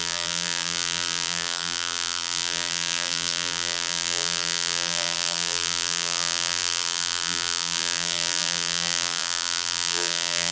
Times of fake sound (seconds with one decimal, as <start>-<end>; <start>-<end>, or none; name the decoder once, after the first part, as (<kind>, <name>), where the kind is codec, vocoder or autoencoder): 0.0-10.5 (vocoder, BigVGAN v2)